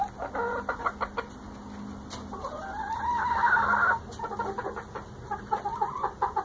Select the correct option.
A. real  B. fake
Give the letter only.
A